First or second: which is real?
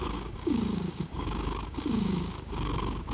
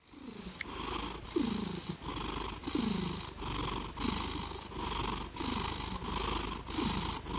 second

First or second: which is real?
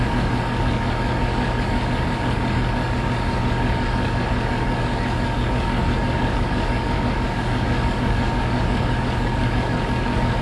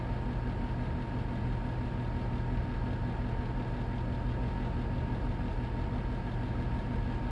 second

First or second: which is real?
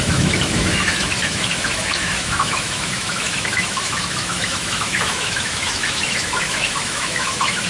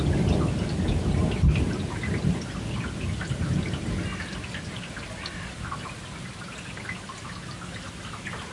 second